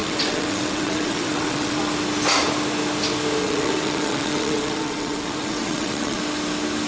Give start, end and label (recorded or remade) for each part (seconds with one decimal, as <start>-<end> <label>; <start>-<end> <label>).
0.0-1.8 remade; 1.8-3.4 recorded; 3.4-6.2 remade; 6.2-6.9 recorded